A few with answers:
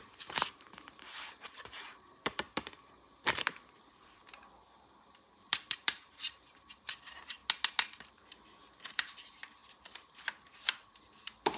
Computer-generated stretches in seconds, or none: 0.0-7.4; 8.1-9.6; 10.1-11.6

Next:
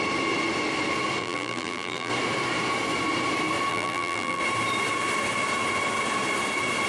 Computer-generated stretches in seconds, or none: 1.2-2.1; 3.7-4.4

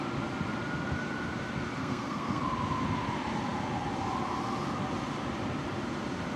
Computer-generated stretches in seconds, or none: 1.8-2.4

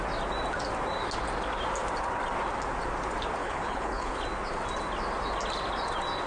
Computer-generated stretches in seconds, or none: 3.4-4.2